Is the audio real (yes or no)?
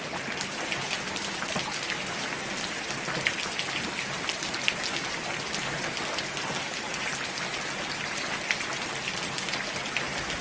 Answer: yes